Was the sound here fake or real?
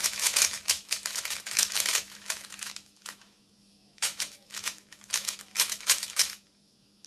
fake